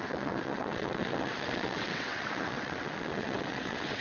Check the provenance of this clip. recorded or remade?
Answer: remade